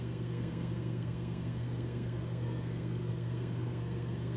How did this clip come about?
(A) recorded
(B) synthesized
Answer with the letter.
B